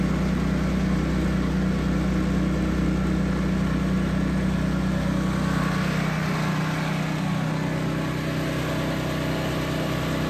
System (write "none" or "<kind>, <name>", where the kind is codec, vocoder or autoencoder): none